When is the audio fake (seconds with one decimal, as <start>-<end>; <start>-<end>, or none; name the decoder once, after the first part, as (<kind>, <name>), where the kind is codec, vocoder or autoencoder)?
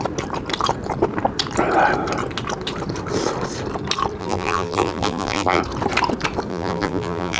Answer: 4.2-5.6 (vocoder, BigVGAN v2); 6.5-7.4